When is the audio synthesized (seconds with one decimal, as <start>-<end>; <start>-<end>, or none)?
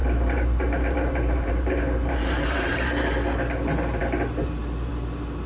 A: 0.0-3.0